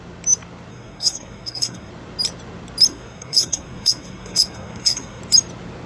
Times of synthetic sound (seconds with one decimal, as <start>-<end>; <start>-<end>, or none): 0.7-1.9; 2.9-5.2